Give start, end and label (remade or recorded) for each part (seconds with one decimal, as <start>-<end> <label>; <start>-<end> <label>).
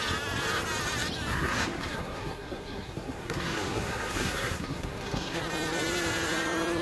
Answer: 0.0-1.3 recorded; 1.3-5.4 remade; 5.4-6.8 recorded